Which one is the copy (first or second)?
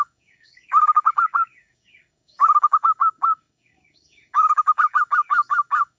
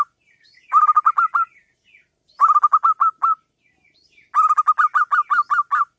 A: first